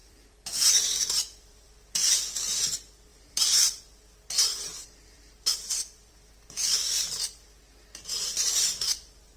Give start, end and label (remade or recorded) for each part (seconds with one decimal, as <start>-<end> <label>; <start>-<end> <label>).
0.0-2.2 remade; 2.2-3.1 recorded; 3.1-3.8 remade; 3.8-4.5 recorded; 4.5-6.1 remade; 6.1-9.4 recorded